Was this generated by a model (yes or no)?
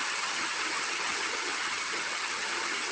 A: yes